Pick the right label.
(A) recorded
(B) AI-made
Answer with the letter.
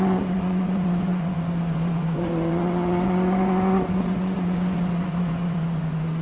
B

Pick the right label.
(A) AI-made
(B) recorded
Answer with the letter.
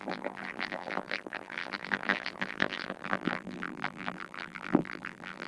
A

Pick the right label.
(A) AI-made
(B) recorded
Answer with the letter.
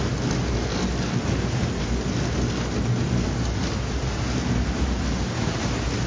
B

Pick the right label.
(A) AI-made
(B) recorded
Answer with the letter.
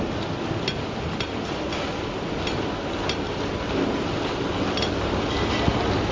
B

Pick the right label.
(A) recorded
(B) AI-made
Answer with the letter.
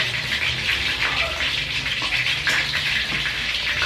A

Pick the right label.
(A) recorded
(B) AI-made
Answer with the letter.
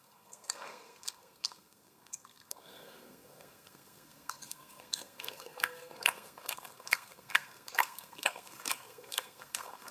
B